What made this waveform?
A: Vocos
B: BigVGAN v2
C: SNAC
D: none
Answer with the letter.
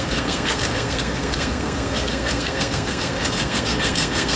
C